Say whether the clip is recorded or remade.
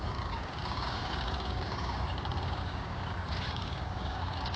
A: remade